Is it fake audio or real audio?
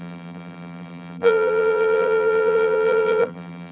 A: fake